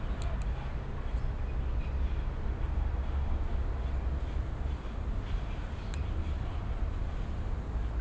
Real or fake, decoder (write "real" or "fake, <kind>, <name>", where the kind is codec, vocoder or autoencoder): real